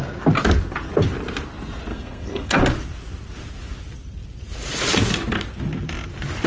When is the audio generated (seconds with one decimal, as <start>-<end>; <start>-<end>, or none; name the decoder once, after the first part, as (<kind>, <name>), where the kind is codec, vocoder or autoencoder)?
1.9-2.6 (codec, SNAC)